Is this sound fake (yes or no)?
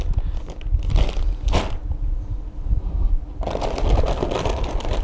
no